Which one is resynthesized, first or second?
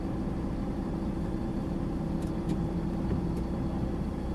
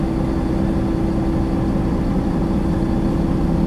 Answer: first